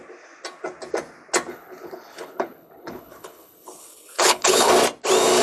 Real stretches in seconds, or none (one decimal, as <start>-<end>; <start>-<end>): 0.0-1.5; 4.7-5.4